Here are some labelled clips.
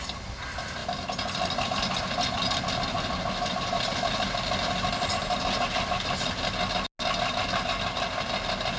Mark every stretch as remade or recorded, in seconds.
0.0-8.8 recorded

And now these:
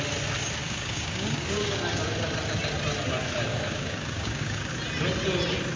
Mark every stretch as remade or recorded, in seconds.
0.0-0.6 recorded; 0.6-1.8 remade; 1.8-3.5 recorded; 3.5-4.7 remade; 4.7-5.8 recorded

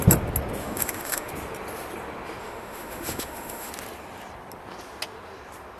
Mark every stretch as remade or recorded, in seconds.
0.0-0.6 recorded; 0.6-1.3 remade; 1.3-2.4 recorded; 2.4-3.7 remade; 3.7-5.8 recorded

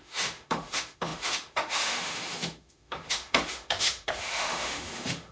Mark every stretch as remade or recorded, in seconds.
0.0-5.3 remade

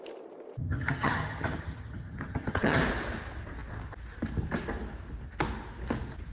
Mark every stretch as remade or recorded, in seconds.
0.0-0.6 recorded; 0.6-2.8 remade; 2.8-6.3 recorded

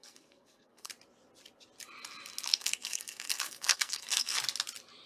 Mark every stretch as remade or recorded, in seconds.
0.0-0.9 remade; 0.9-2.5 recorded; 2.5-4.4 remade; 4.4-5.1 recorded

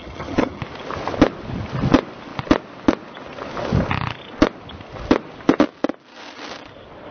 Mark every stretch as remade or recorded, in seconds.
0.0-0.6 remade; 0.6-7.1 recorded

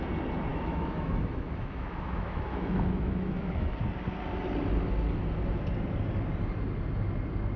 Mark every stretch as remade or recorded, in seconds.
0.0-0.5 recorded; 0.5-3.8 remade; 3.8-7.6 recorded